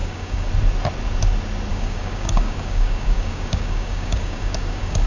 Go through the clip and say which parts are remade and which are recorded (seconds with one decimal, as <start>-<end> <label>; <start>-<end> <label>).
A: 0.0-0.5 remade; 0.5-1.7 recorded; 1.7-5.1 remade